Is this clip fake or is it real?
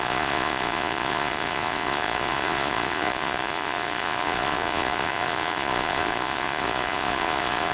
fake